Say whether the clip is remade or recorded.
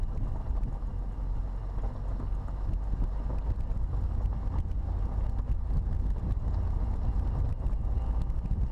recorded